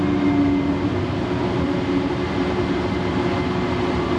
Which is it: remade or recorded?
recorded